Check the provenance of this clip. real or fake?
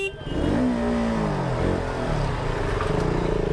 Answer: real